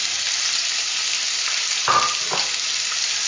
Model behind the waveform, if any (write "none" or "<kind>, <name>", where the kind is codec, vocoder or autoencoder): none